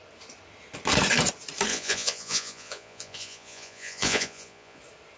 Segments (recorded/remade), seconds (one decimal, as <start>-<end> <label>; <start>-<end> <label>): 0.0-1.7 recorded; 1.7-4.8 remade; 4.8-5.2 recorded